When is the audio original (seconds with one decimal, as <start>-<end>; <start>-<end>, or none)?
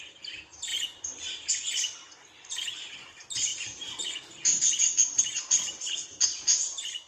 2.0-3.1